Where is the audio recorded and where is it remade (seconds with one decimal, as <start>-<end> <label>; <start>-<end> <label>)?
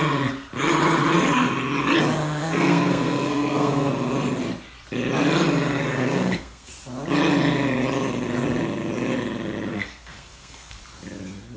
0.0-2.2 recorded; 2.2-3.9 remade; 3.9-5.8 recorded; 5.8-6.7 remade; 6.7-9.7 recorded; 9.7-10.8 remade; 10.8-11.6 recorded